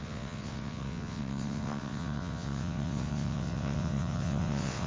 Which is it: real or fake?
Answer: fake